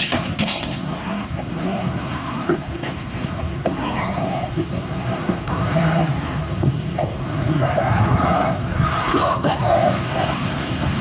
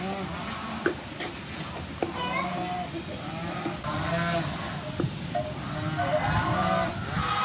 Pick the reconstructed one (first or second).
first